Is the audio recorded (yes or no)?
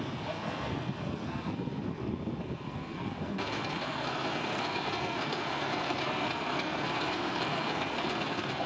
no